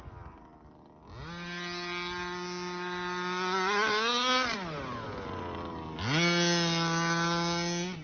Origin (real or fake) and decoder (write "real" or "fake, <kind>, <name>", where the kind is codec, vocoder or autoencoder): real